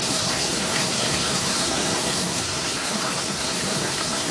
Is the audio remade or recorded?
remade